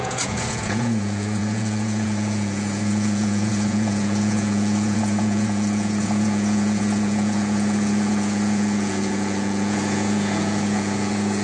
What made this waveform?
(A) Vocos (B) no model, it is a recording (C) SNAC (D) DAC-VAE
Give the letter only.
A